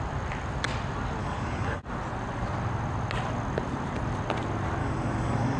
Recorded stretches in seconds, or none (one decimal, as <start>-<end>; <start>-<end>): 0.0-1.2; 1.8-4.8